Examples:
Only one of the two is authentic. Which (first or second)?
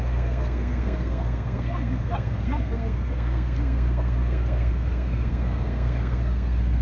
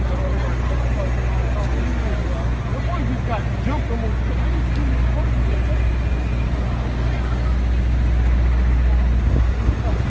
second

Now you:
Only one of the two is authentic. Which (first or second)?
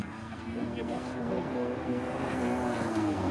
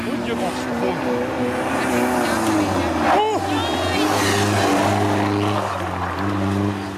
second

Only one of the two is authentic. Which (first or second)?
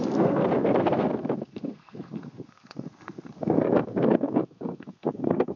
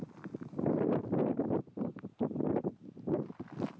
second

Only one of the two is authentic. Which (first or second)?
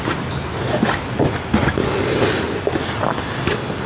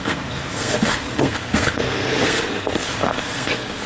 first